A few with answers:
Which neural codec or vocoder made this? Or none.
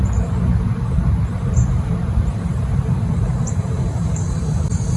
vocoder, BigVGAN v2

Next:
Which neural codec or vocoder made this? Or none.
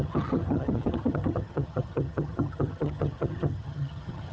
vocoder, HiFi-GAN